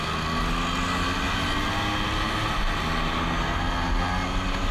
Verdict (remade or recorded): recorded